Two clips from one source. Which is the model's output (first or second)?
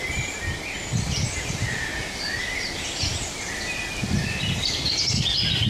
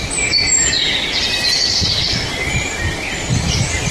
second